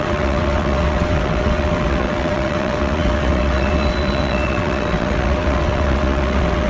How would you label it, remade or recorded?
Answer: remade